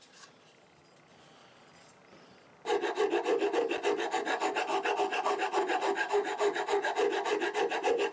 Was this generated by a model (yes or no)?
no